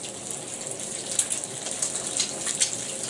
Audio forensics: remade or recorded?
recorded